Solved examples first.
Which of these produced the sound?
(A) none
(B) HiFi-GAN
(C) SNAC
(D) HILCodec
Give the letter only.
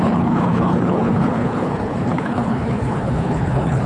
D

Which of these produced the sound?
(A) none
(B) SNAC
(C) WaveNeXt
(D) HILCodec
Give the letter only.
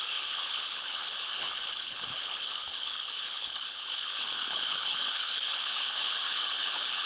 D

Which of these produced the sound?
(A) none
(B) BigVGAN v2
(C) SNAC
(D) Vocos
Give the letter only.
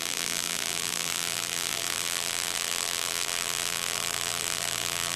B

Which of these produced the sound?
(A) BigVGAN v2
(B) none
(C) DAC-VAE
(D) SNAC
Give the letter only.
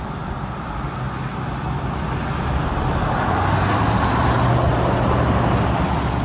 B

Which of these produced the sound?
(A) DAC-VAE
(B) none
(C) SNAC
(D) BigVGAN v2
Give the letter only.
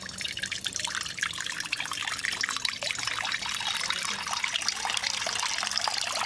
B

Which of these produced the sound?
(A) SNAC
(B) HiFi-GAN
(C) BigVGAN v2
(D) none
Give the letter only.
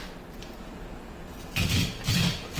D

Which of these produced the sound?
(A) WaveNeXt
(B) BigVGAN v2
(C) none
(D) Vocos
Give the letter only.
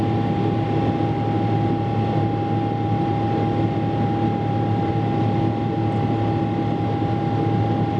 C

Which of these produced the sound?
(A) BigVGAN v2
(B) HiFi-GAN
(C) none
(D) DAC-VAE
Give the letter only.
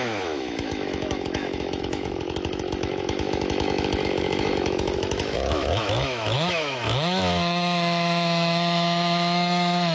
D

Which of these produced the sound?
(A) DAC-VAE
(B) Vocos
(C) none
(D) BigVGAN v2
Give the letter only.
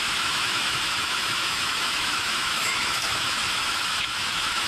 A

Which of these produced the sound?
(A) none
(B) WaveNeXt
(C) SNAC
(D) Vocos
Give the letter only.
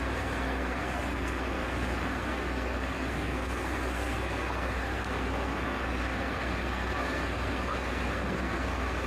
C